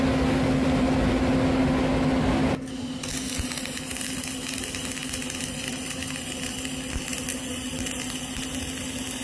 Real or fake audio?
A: real